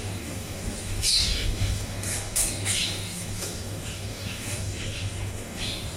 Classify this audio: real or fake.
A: fake